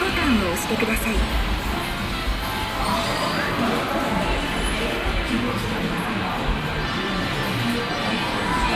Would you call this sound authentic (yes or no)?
yes